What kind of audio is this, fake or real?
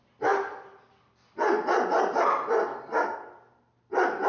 fake